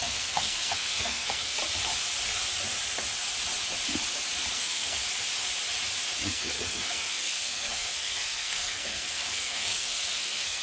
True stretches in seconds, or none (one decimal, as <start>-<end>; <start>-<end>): 1.6-4.5; 5.0-6.2